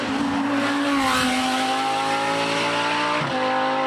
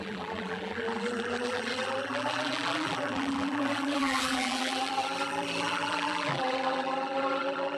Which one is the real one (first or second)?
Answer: first